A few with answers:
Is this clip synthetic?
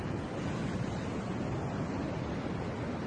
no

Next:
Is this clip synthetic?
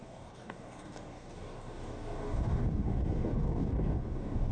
yes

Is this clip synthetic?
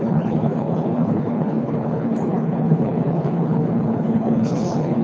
yes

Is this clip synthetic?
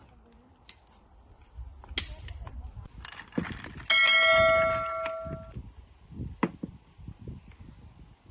no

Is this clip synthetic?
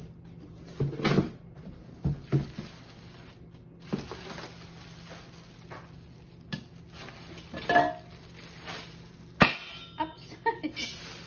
no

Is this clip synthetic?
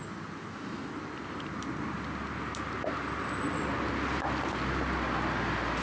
no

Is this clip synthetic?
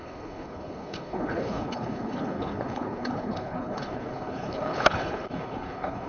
yes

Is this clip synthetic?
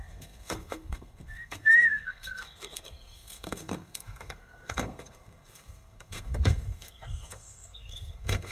yes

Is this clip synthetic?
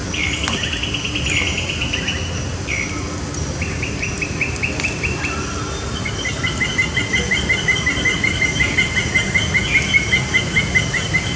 no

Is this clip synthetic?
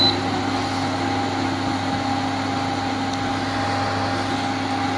no